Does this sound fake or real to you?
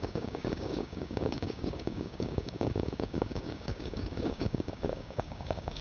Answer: fake